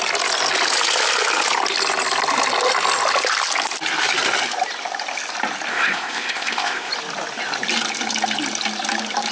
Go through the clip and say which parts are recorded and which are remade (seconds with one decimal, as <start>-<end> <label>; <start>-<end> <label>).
0.0-5.7 recorded; 5.7-6.9 remade; 6.9-9.3 recorded